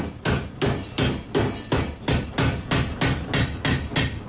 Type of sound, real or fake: real